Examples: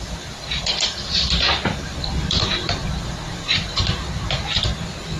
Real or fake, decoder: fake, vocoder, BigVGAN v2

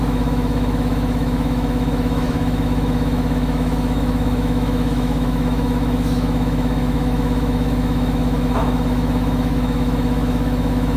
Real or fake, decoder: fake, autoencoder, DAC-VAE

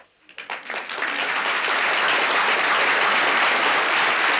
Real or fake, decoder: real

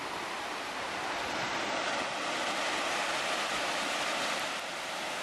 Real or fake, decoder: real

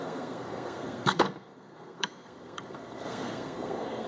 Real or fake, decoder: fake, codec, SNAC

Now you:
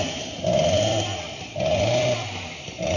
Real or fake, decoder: fake, vocoder, BigVGAN v2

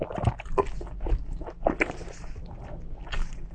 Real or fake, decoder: real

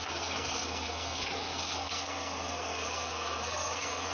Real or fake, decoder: fake, codec, SNAC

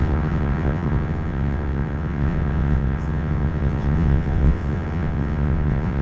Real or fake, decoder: fake, vocoder, WaveNeXt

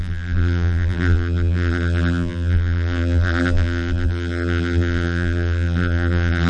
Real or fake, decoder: fake, vocoder, BigVGAN v2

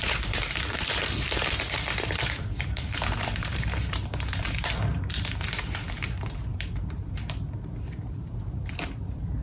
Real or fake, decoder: fake, vocoder, BigVGAN v2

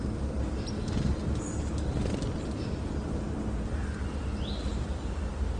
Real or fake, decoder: real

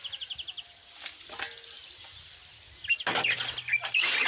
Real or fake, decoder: real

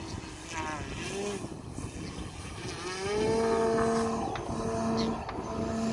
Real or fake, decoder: real